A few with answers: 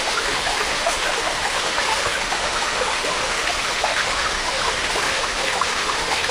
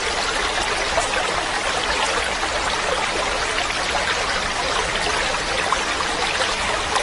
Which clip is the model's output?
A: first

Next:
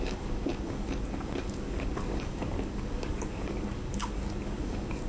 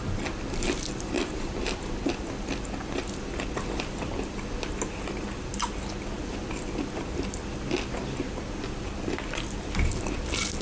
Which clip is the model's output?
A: first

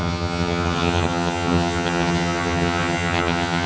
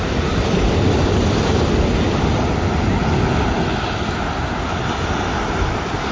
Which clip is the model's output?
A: first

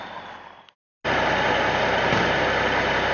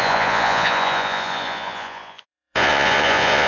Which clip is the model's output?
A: second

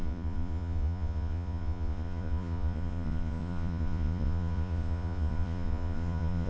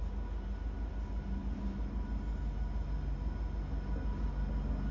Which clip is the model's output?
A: first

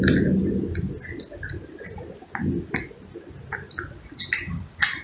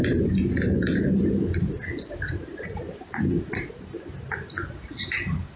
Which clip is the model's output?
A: second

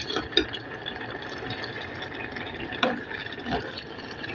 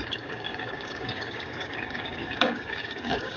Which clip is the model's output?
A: second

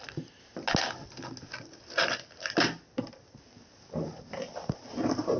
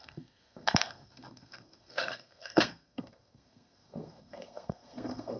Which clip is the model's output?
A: second